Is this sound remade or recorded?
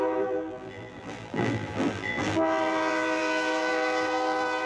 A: remade